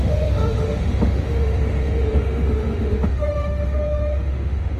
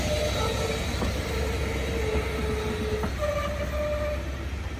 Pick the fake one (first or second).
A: first